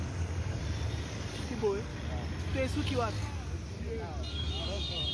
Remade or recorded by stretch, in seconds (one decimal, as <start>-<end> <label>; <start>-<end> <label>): 0.0-0.6 remade; 0.6-1.1 recorded; 1.1-1.9 remade; 1.9-4.3 recorded; 4.3-5.1 remade